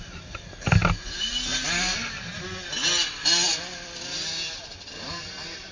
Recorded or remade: recorded